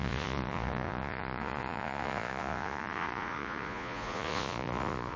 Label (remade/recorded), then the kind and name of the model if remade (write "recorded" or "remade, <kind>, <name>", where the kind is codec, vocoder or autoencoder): remade, vocoder, Vocos